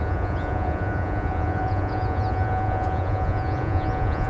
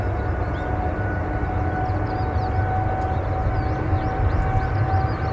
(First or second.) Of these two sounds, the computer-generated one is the first